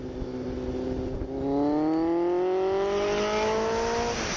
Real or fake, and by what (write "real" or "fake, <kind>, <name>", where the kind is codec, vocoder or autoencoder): real